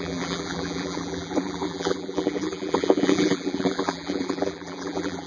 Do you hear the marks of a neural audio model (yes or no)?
yes